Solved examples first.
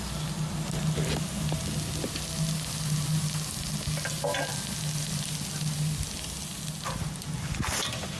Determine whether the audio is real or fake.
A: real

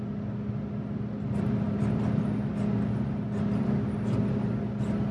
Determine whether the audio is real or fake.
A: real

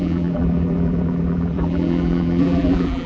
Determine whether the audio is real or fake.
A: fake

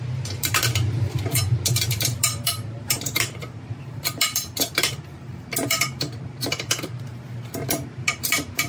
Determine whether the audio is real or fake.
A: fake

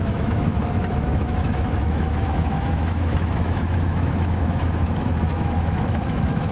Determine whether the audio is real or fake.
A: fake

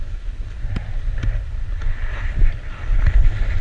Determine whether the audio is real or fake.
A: real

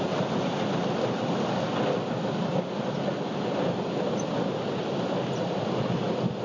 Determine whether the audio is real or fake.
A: real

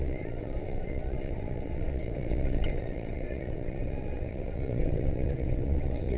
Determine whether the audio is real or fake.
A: fake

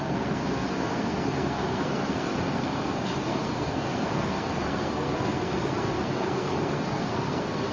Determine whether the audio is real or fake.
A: fake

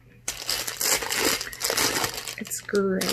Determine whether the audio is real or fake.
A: real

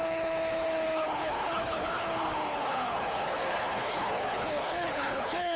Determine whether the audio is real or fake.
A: fake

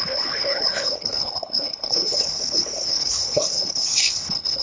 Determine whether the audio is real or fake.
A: fake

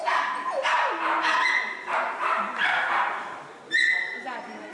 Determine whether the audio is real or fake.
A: fake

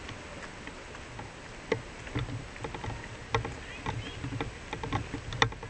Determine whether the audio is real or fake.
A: real